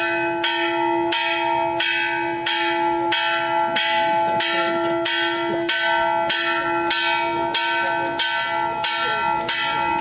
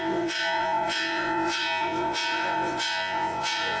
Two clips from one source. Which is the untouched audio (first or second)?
first